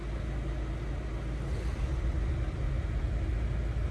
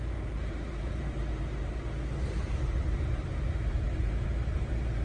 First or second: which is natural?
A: first